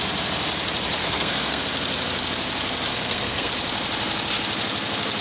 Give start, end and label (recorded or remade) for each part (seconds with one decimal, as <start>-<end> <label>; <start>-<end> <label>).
0.0-1.0 recorded; 1.0-1.6 remade; 1.6-2.9 recorded; 2.9-3.5 remade; 3.5-5.2 recorded